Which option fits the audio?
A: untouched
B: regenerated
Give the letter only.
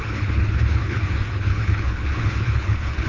B